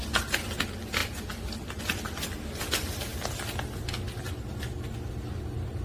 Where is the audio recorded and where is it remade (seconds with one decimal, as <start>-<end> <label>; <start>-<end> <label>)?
0.0-5.8 recorded